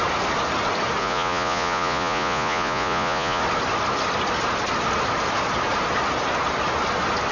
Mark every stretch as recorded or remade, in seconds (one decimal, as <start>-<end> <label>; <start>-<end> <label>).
0.0-1.0 recorded; 1.0-3.4 remade; 3.4-7.3 recorded